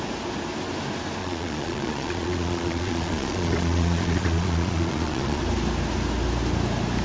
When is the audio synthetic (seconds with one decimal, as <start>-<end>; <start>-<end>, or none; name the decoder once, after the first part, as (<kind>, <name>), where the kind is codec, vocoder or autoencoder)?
1.2-5.4 (vocoder, Vocos)